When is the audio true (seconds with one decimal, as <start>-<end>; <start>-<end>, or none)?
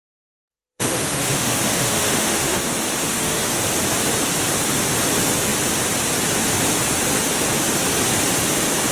0.0-0.5; 3.5-8.9